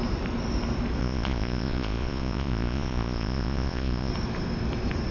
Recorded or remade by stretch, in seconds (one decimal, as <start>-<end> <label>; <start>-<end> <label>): 0.0-1.0 recorded; 1.0-4.1 remade; 4.1-5.1 recorded